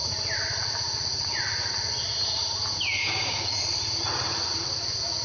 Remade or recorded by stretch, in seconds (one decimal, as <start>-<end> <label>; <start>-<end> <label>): 0.0-3.0 recorded; 3.0-3.6 remade; 3.6-5.2 recorded